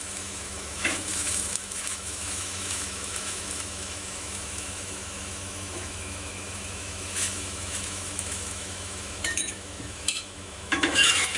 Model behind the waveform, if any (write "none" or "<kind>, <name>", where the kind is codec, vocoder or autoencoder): autoencoder, DAC-VAE